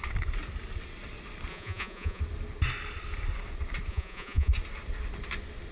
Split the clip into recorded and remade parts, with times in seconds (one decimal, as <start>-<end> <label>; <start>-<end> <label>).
0.0-1.5 recorded; 1.5-2.2 remade; 2.2-3.9 recorded; 3.9-4.5 remade; 4.5-5.7 recorded